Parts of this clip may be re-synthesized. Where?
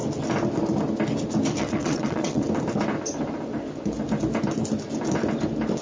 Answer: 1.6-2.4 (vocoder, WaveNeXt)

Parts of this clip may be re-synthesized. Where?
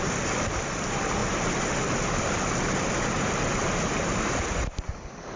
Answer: none